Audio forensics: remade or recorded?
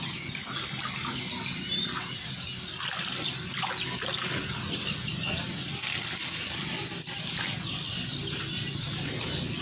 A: recorded